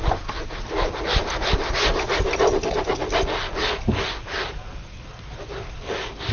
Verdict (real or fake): real